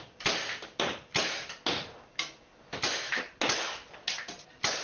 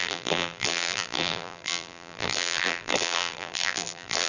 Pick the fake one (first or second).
second